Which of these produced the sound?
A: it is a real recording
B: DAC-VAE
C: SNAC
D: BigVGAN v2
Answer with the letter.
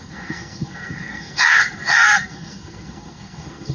C